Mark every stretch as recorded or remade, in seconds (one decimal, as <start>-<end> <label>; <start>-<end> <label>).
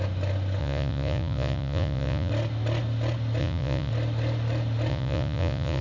0.0-0.6 recorded; 0.6-2.3 remade; 2.3-3.4 recorded; 3.4-3.9 remade; 3.9-4.9 recorded; 4.9-5.8 remade